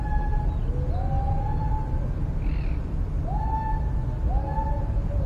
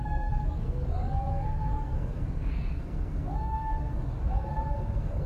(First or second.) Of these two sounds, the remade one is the second